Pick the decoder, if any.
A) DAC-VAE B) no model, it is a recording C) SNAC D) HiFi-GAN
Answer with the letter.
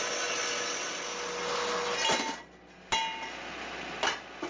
B